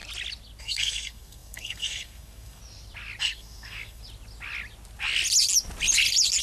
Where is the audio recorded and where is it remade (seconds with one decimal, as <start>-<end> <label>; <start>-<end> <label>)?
0.0-0.6 recorded; 0.6-2.6 remade; 2.6-3.2 recorded; 3.2-4.0 remade; 4.0-6.4 recorded